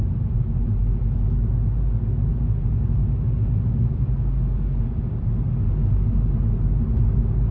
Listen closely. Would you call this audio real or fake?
real